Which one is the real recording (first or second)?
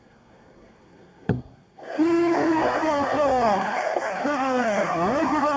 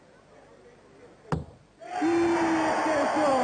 second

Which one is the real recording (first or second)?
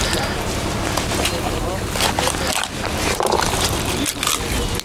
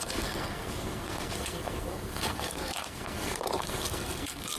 first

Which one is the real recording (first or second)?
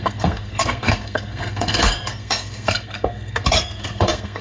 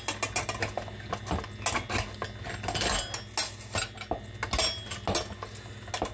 second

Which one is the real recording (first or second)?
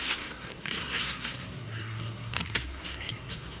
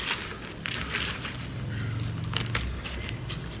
second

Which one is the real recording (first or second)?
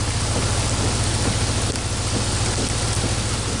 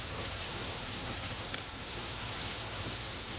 first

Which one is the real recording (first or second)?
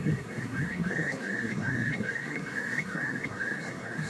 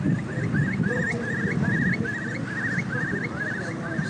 second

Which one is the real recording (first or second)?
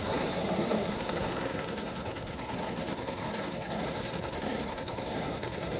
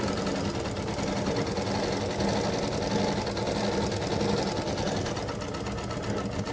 second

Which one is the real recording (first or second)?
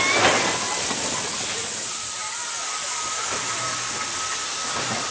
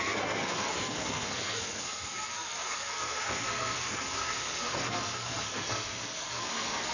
first